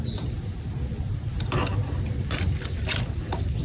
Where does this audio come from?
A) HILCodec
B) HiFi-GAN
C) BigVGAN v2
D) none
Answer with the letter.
D